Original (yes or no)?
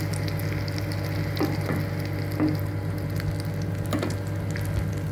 yes